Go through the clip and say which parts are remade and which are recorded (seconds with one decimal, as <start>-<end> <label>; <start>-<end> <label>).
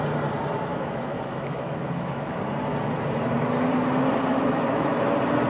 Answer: 0.0-0.7 recorded; 0.7-2.4 remade; 2.4-4.3 recorded; 4.3-4.9 remade; 4.9-5.5 recorded